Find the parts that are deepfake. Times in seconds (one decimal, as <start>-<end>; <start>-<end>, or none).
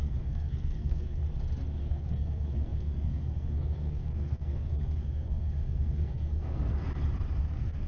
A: 0.0-1.2; 1.8-6.8; 7.4-7.9